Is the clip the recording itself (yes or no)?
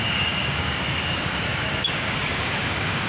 no